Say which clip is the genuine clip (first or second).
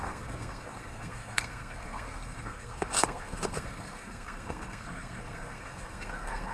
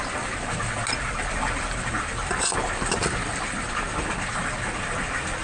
second